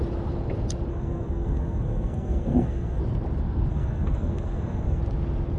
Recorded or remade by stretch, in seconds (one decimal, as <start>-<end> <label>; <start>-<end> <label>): 0.0-0.9 recorded; 0.9-3.0 remade; 3.0-3.7 recorded; 3.7-5.0 remade; 5.0-5.6 recorded